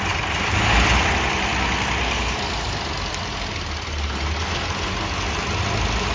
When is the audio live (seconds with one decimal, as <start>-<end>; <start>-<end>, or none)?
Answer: 0.0-6.1